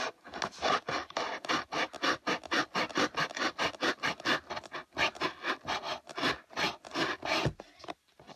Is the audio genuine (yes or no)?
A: yes